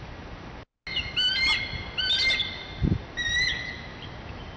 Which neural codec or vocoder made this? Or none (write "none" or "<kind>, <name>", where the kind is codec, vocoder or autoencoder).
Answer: none